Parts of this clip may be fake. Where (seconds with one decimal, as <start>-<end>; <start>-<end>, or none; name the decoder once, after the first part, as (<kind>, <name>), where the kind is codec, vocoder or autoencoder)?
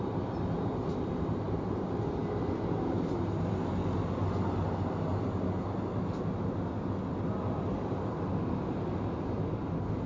none